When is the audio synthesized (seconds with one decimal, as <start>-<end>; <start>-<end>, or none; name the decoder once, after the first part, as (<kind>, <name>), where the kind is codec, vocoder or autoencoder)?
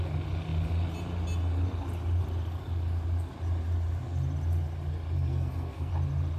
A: 5.3-5.9 (codec, SNAC)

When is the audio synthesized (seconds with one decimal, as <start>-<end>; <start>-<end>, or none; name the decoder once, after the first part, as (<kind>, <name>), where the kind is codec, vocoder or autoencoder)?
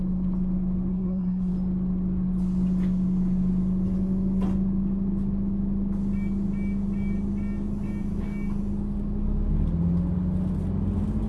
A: 0.9-1.5 (codec, SNAC)